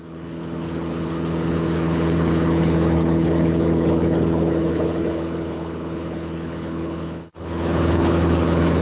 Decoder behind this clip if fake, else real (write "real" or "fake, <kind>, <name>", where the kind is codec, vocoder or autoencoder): fake, codec, HILCodec